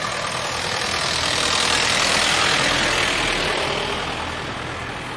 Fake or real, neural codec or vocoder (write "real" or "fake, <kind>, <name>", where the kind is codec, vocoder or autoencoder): real